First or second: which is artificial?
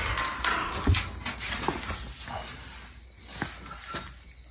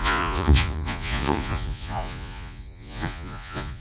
second